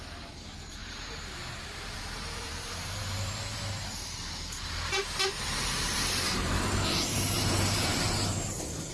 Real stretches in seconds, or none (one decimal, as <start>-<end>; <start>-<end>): 7.9-8.9